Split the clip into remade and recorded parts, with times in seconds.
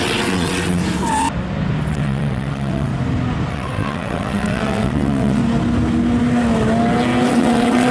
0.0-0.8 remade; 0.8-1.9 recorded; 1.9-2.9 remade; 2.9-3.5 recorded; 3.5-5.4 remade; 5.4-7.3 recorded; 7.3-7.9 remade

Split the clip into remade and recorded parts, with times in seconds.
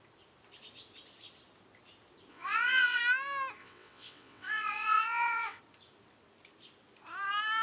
0.0-2.3 recorded; 2.3-3.0 remade; 3.0-3.6 recorded; 3.6-5.6 remade; 5.6-7.6 recorded